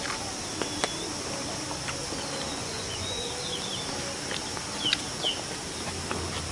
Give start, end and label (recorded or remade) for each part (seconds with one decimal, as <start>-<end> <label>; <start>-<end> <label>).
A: 0.0-2.5 recorded; 2.5-3.3 remade; 3.3-6.5 recorded